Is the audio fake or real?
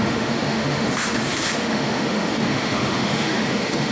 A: fake